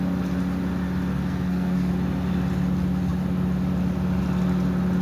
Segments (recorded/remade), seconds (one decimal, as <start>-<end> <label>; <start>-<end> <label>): 0.0-1.1 recorded; 1.1-1.9 remade; 1.9-5.0 recorded